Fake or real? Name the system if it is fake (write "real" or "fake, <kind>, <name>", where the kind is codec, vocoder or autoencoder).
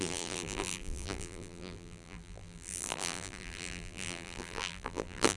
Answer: fake, vocoder, BigVGAN v2